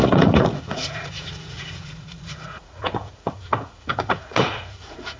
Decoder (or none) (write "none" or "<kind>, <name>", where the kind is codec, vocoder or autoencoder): vocoder, Vocos